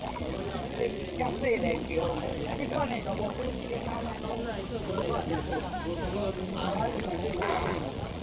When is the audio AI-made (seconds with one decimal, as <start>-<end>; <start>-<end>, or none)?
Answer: 0.0-4.4; 4.9-5.4; 6.3-8.2